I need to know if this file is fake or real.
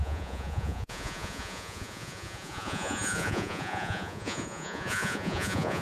fake